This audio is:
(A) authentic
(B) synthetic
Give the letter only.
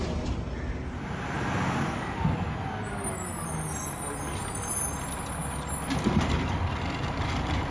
A